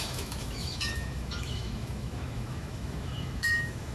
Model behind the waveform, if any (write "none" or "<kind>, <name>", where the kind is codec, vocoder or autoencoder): autoencoder, DAC-VAE